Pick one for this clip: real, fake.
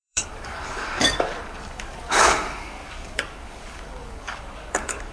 fake